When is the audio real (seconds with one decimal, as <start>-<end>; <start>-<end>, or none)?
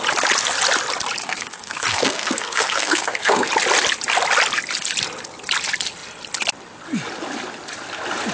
0.0-1.2; 3.5-8.3